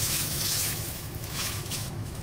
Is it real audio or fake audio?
fake